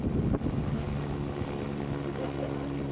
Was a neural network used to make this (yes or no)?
no